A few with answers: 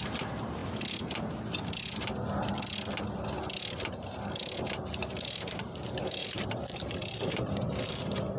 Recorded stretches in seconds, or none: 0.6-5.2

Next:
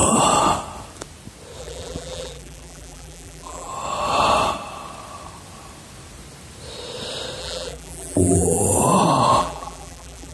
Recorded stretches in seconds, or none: 0.0-1.6; 3.7-7.4; 8.6-9.4

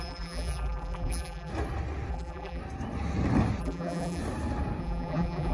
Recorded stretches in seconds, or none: 1.5-2.1; 2.6-3.6; 4.2-4.8